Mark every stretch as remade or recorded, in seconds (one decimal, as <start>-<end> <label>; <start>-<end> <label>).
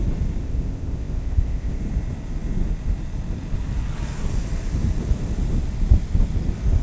0.0-0.4 recorded; 0.4-1.8 remade; 1.8-6.8 recorded